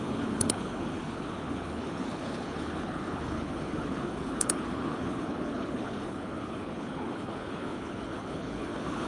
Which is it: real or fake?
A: fake